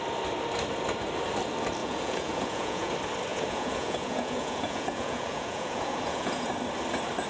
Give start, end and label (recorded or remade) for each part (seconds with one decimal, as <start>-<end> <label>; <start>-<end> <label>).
0.0-1.8 recorded; 1.8-2.9 remade; 2.9-3.3 recorded; 3.3-6.5 remade; 6.5-7.3 recorded